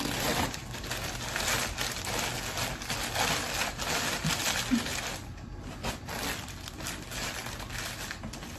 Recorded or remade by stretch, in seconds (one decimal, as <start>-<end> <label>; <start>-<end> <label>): 0.0-8.6 recorded